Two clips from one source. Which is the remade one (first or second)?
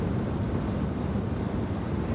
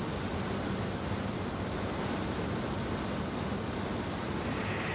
first